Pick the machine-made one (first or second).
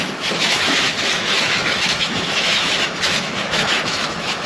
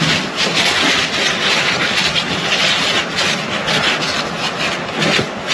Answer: first